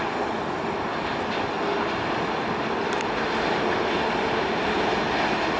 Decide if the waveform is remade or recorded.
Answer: recorded